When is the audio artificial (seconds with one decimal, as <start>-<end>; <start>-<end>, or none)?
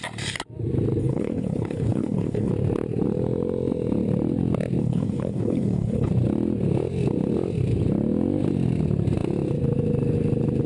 1.0-2.5; 4.8-6.1